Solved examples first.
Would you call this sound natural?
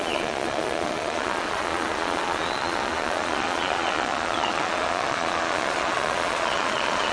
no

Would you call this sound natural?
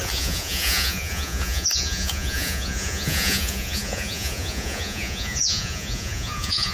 no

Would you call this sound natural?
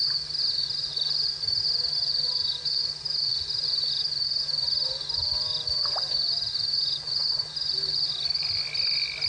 yes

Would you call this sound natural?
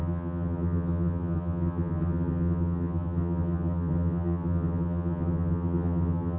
no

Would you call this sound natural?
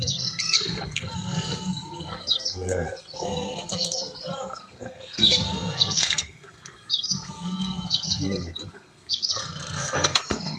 no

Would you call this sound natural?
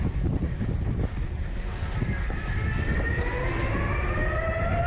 yes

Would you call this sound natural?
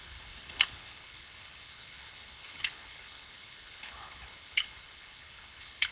no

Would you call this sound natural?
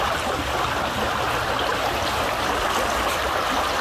yes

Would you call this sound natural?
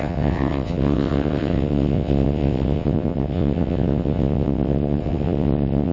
no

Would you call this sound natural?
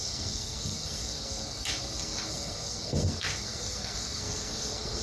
no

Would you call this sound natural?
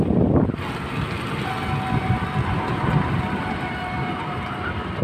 yes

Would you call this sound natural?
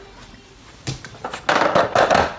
yes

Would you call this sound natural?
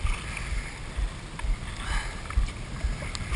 yes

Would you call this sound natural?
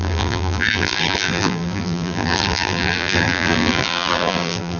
no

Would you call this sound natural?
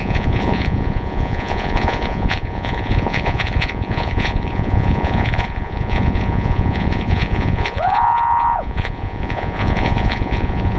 no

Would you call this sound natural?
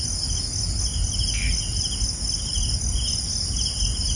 yes